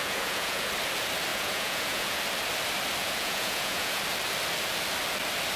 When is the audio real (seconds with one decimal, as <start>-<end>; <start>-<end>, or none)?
0.7-1.3; 2.2-3.0; 4.0-5.6